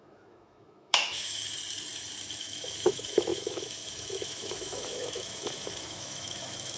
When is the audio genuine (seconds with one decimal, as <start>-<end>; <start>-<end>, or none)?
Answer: 1.4-2.4

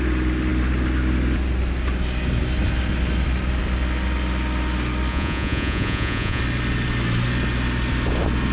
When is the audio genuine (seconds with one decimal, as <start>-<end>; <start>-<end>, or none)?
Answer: 0.0-5.1; 6.4-8.5